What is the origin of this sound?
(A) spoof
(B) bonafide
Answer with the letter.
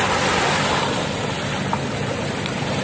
B